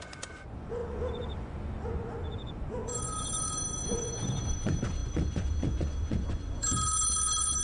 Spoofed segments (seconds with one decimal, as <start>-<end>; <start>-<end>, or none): 0.0-7.6